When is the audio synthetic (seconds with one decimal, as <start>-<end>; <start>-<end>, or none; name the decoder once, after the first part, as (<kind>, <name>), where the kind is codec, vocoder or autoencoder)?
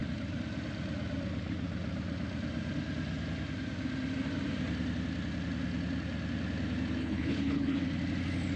7.0-7.8 (codec, HILCodec)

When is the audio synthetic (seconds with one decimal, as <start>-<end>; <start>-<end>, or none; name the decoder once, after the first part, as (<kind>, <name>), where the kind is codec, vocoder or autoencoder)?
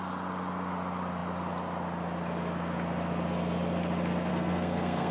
4.3-5.1 (codec, SNAC)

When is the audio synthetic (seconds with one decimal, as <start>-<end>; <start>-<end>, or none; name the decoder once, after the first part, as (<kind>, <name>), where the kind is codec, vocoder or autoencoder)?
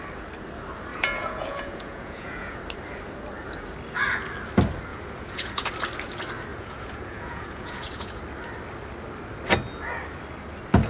0.9-2.6 (vocoder, Vocos); 4.9-5.7; 6.5-8.1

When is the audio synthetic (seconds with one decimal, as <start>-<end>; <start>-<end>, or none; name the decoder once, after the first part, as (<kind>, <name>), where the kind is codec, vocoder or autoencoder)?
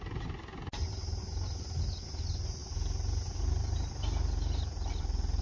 none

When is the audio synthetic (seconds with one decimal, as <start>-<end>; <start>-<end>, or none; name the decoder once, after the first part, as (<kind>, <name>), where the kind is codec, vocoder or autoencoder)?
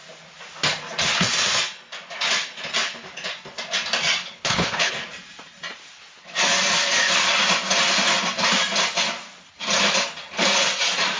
4.2-4.9 (codec, HILCodec)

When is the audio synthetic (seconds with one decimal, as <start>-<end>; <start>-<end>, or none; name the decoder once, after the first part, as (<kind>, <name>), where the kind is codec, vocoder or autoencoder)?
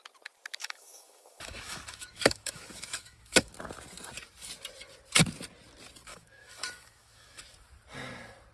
0.6-3.5 (autoencoder, DAC-VAE); 6.1-7.4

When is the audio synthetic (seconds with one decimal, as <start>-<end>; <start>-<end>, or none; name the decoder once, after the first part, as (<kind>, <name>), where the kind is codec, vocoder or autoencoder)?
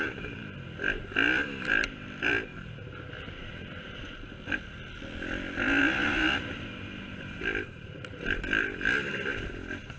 0.0-0.4 (vocoder, BigVGAN v2); 1.7-2.5; 5.8-10.0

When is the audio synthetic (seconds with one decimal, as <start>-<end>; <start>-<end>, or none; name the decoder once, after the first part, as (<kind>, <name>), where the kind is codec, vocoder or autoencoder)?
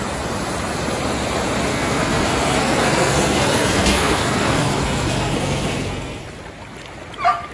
1.7-6.2 (codec, SNAC)